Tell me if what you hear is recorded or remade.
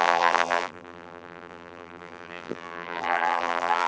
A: remade